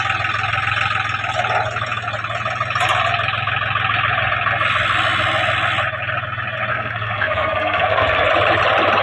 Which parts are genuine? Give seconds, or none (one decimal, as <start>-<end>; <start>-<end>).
0.0-6.7; 8.3-9.0